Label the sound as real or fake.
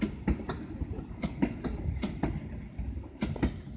real